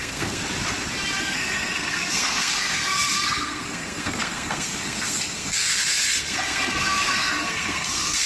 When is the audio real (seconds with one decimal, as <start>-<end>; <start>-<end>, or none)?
0.4-1.2